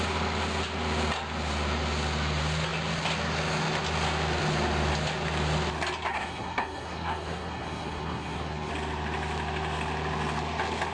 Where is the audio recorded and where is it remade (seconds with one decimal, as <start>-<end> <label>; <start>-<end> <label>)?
0.0-6.1 recorded; 6.1-8.7 remade; 8.7-10.9 recorded